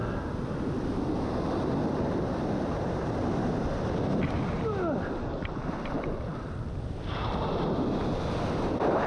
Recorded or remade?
recorded